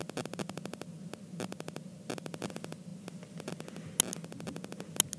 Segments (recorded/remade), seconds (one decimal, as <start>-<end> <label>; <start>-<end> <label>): 0.0-5.2 recorded